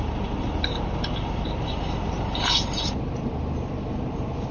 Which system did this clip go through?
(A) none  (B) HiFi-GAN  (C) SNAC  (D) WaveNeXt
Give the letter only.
A